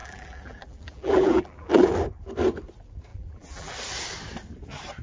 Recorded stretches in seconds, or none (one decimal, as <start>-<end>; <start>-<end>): 1.9-3.1; 3.7-5.0

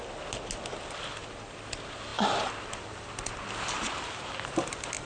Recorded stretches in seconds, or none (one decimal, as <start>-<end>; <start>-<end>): 0.0-5.1

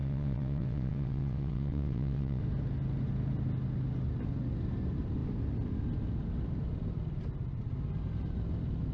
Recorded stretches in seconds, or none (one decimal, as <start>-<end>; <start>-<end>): 2.4-8.9

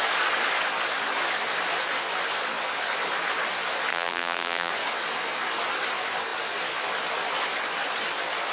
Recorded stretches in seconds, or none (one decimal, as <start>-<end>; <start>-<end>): 0.0-3.9; 4.7-8.5

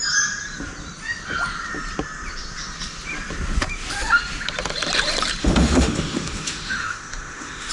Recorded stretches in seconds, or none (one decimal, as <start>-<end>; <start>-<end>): 0.0-5.4